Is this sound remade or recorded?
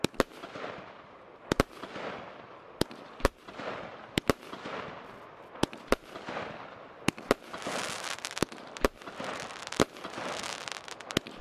recorded